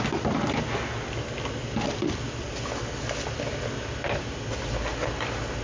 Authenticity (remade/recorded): recorded